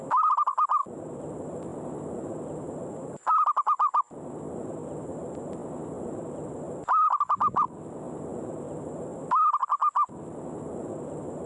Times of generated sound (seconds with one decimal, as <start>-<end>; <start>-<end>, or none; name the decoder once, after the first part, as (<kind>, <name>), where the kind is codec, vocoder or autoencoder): none